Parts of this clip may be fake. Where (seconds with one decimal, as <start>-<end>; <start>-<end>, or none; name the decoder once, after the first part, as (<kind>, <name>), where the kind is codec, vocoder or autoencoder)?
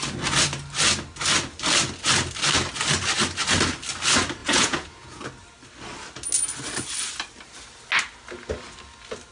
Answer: 4.4-5.2 (vocoder, Vocos)